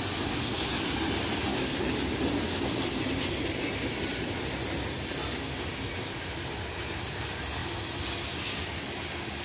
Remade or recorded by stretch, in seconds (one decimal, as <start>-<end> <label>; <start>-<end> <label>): 0.0-1.5 recorded; 1.5-2.0 remade; 2.0-9.4 recorded